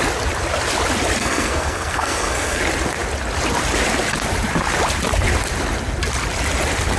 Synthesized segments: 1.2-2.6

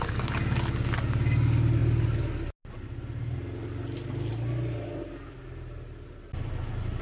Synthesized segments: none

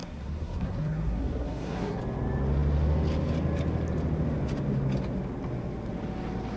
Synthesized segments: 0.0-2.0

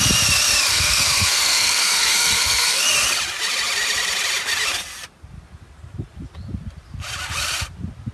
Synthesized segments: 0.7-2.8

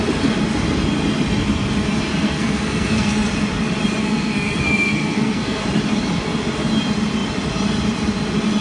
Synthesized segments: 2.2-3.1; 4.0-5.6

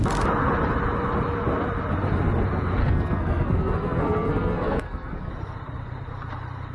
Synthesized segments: 2.8-5.3

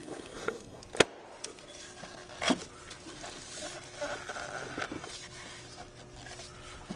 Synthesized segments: 0.0-0.8

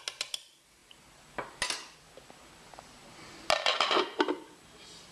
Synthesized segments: none